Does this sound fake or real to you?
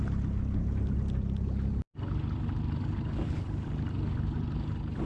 real